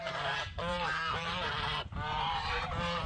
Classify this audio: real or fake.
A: fake